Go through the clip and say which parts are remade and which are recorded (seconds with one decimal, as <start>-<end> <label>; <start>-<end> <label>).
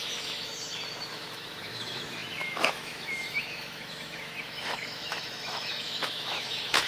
0.0-0.5 remade; 0.5-1.1 recorded; 1.1-6.9 remade